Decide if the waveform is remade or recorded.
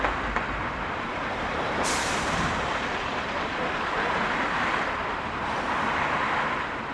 remade